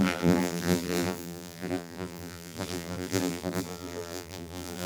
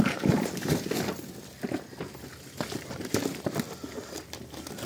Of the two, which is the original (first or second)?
second